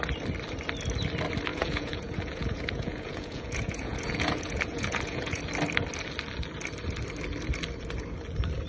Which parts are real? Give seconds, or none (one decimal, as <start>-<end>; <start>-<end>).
0.0-1.5; 5.4-8.7

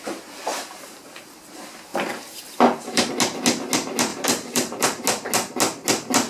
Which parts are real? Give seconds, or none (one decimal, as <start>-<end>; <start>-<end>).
0.0-0.5; 1.3-1.9; 3.1-4.1; 5.0-6.3

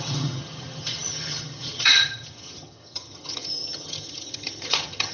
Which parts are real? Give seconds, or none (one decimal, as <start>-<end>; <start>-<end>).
none

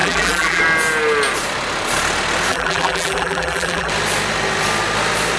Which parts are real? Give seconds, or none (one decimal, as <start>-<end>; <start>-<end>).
0.6-2.5; 3.9-5.4

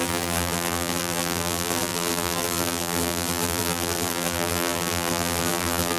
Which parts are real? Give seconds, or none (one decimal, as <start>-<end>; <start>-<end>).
none

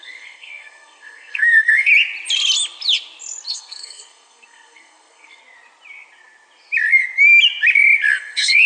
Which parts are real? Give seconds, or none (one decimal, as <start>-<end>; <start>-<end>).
1.9-3.5; 5.4-8.1

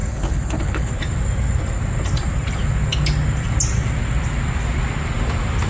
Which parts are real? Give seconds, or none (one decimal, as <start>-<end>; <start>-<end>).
0.9-5.7

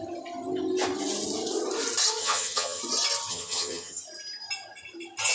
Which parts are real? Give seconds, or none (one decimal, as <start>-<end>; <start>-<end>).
0.0-2.2; 2.8-3.3; 4.0-5.3